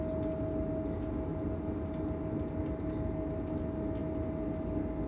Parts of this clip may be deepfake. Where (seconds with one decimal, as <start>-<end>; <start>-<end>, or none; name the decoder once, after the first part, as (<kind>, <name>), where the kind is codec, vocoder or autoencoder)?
none